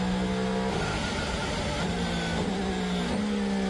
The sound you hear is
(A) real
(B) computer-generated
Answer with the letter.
A